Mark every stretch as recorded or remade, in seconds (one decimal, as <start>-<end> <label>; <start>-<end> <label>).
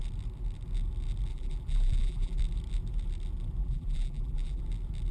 0.0-1.3 recorded; 1.3-2.4 remade; 2.4-3.6 recorded; 3.6-4.6 remade; 4.6-5.1 recorded